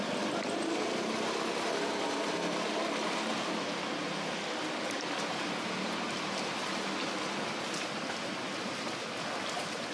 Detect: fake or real real